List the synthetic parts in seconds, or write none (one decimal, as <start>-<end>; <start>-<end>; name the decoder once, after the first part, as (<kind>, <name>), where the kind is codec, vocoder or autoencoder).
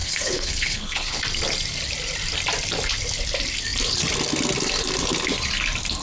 0.0-1.2 (codec, HILCodec)